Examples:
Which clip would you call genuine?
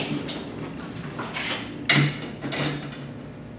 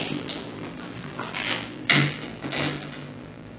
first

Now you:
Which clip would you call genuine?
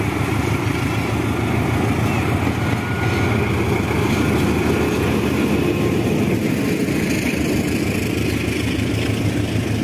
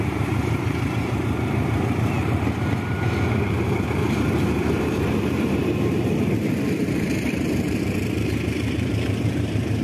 first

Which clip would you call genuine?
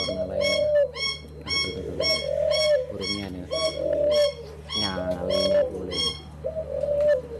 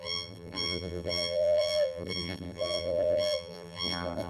first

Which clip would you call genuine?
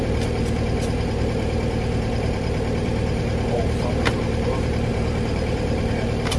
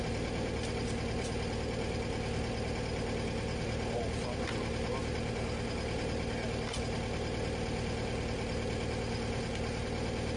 second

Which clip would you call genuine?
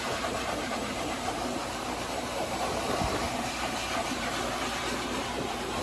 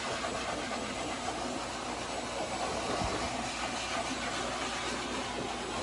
second